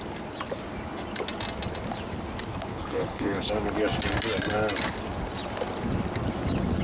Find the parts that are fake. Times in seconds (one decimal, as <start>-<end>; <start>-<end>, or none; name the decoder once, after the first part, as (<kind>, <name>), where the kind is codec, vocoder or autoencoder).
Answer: 2.7-3.5 (codec, HILCodec)